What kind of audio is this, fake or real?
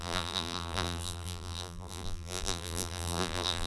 fake